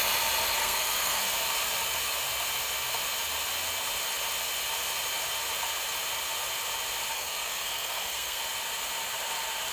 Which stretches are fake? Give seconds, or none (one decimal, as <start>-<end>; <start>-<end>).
0.6-1.2; 7.1-8.4

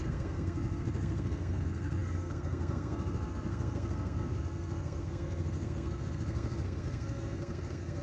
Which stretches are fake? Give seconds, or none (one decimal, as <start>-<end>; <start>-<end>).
0.0-8.0

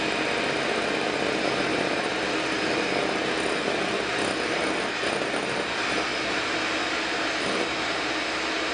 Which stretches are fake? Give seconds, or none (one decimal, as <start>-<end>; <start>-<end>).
1.7-2.3; 6.1-7.3